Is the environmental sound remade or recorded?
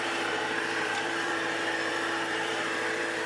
remade